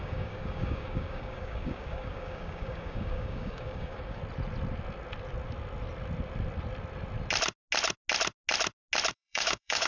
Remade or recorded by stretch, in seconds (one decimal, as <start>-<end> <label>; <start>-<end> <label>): 0.0-4.2 remade; 4.2-9.1 recorded; 9.1-9.9 remade